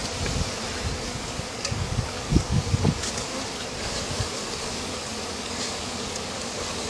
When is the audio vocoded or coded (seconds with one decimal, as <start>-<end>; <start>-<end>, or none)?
1.0-3.3; 3.8-6.9